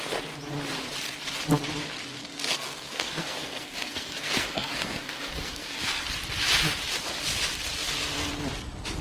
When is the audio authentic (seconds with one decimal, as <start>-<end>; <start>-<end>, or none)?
0.0-2.2; 6.0-9.0